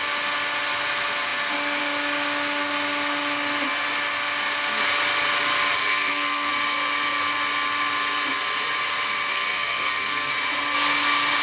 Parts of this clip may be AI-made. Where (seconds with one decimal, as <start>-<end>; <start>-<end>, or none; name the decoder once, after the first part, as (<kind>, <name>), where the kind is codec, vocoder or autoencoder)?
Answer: 5.8-6.5 (codec, SNAC); 9.3-10.3

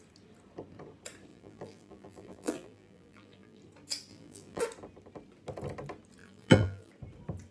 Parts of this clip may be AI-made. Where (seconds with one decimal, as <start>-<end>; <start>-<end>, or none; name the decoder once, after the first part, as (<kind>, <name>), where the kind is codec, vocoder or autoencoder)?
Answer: 1.3-3.6 (vocoder, BigVGAN v2); 4.1-4.6; 6.2-6.9

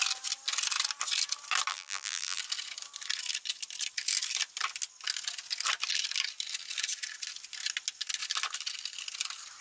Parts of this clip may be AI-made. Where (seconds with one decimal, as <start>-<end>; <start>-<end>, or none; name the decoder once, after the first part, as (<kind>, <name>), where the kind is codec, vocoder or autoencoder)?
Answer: 1.7-2.4 (vocoder, BigVGAN v2)

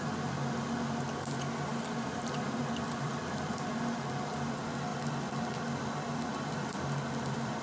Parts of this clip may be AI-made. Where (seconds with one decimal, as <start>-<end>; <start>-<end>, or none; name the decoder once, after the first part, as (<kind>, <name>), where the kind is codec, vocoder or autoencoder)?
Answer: 1.7-3.7 (vocoder, BigVGAN v2); 4.9-7.6

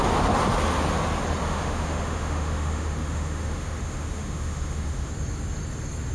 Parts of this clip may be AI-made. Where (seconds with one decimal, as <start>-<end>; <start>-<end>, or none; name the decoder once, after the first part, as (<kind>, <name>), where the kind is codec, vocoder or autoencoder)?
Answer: 1.4-5.1 (autoencoder, DAC-VAE)

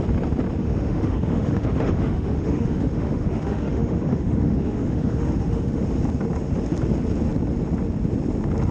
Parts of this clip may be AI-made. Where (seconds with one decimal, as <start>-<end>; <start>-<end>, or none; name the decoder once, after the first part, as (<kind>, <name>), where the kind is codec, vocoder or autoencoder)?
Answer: 0.6-5.8 (autoencoder, DAC-VAE)

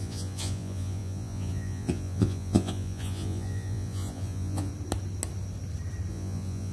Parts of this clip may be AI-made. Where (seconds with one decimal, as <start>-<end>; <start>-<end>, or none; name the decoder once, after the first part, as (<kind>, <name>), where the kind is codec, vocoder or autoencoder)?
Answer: 0.0-4.7 (vocoder, Vocos); 6.1-6.7